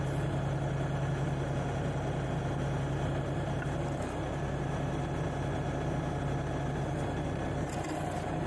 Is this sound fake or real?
real